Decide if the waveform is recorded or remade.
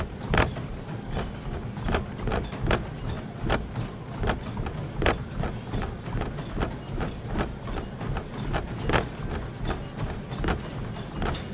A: recorded